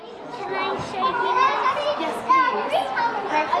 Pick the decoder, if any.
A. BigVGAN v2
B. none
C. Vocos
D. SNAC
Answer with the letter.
B